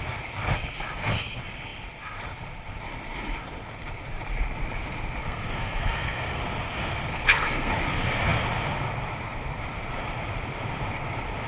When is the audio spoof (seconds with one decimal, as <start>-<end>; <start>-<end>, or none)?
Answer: 5.2-6.4; 7.1-7.7